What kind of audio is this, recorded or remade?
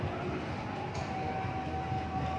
recorded